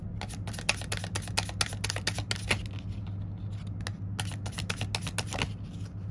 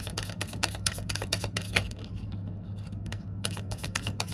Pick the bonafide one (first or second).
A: first